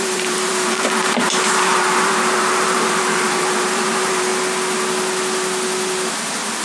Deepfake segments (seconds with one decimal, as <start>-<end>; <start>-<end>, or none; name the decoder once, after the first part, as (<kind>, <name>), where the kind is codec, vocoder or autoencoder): 0.0-4.3 (vocoder, BigVGAN v2)